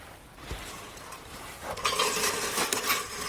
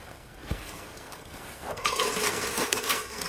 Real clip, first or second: first